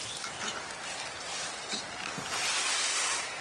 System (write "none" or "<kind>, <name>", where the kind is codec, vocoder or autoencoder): none